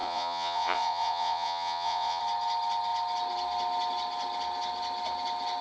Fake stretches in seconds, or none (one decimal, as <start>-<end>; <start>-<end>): 0.0-2.2